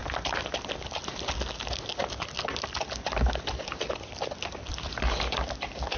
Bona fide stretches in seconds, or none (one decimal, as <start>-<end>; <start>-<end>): 0.0-3.5